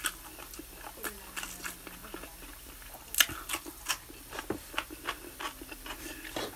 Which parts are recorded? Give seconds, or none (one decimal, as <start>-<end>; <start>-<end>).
0.0-6.6